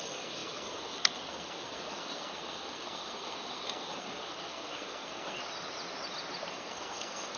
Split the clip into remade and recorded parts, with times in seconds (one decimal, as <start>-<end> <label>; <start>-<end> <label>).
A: 0.0-5.4 remade; 5.4-6.5 recorded; 6.5-7.4 remade